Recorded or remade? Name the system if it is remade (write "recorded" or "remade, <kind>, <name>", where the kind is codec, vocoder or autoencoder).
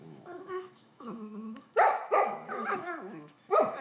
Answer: remade, autoencoder, DAC-VAE